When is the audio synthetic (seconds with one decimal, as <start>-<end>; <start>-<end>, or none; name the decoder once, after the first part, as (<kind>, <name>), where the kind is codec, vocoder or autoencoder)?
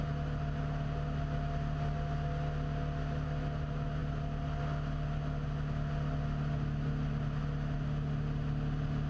none